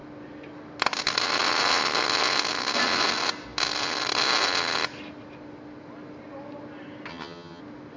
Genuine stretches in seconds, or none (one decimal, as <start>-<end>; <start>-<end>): 0.0-7.1; 7.6-8.0